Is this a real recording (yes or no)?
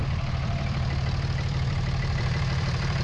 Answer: no